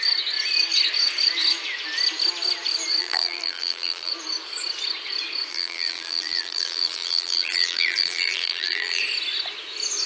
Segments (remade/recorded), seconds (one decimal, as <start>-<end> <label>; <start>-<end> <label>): 0.0-3.0 recorded; 3.0-4.1 remade; 4.1-5.5 recorded; 5.5-9.0 remade; 9.0-10.1 recorded

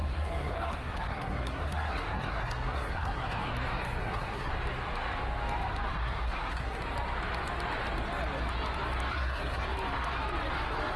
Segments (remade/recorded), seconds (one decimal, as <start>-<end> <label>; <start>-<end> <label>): 0.0-3.5 remade; 3.5-4.0 recorded; 4.0-4.5 remade; 4.5-5.9 recorded; 5.9-6.8 remade; 6.8-9.1 recorded; 9.1-9.6 remade; 9.6-11.0 recorded